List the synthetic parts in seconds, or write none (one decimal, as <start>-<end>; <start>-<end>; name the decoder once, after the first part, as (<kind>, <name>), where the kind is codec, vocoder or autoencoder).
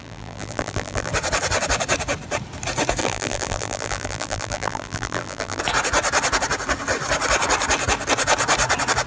0.0-1.1 (vocoder, BigVGAN v2); 3.0-5.6